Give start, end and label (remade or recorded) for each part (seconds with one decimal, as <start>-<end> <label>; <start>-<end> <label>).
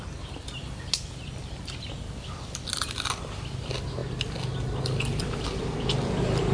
0.0-6.5 recorded